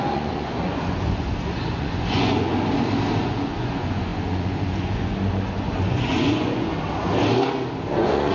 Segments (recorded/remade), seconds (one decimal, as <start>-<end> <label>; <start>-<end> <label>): 0.0-2.5 remade; 2.5-3.2 recorded; 3.2-6.7 remade; 6.7-7.9 recorded; 7.9-8.3 remade